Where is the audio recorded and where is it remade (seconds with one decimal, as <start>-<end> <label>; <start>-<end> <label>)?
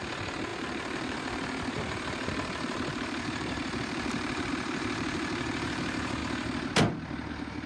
0.0-6.2 remade; 6.2-7.3 recorded; 7.3-7.7 remade